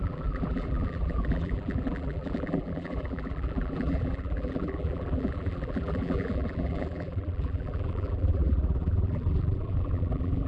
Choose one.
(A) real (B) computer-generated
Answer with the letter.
B